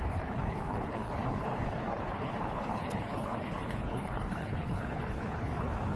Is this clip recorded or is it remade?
remade